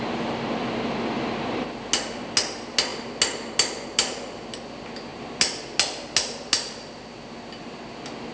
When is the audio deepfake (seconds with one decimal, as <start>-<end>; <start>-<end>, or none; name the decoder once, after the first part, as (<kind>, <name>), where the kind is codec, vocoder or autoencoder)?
none